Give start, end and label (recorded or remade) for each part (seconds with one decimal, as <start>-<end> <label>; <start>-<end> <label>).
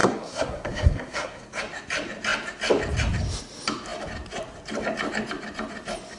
0.0-1.6 remade; 1.6-6.2 recorded